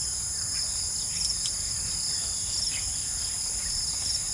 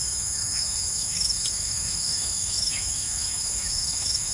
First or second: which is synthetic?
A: second